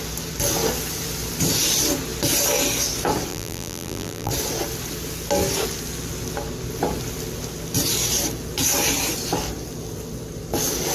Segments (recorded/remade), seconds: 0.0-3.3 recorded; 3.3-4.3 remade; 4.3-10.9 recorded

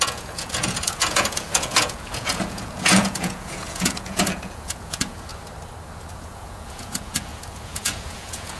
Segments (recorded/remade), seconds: 0.0-5.3 remade; 5.3-6.1 recorded; 6.1-8.6 remade

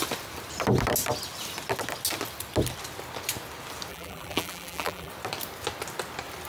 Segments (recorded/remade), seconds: 0.0-3.9 recorded; 3.9-5.1 remade; 5.1-6.5 recorded

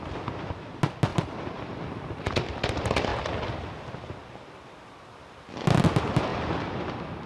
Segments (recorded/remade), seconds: 0.0-1.1 recorded; 1.1-2.3 remade; 2.3-3.1 recorded; 3.1-3.7 remade; 3.7-6.3 recorded; 6.3-7.3 remade

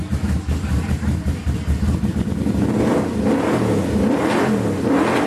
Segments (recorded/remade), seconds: 0.0-5.3 recorded

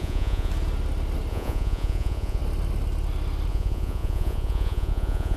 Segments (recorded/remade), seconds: 0.0-0.5 remade; 0.5-1.3 recorded; 1.3-2.4 remade; 2.4-3.5 recorded; 3.5-5.4 remade

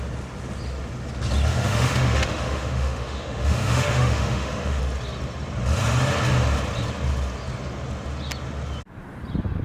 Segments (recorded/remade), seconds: 0.0-1.5 recorded; 1.5-4.8 remade; 4.8-9.6 recorded

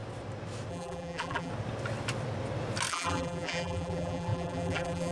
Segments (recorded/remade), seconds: 0.0-0.7 recorded; 0.7-1.5 remade; 1.5-2.9 recorded; 2.9-5.1 remade